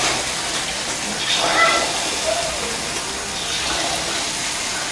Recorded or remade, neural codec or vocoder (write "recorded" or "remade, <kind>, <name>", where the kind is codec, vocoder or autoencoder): recorded